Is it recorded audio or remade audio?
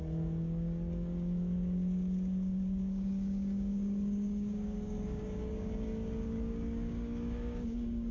remade